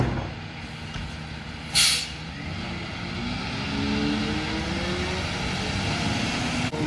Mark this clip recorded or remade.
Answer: recorded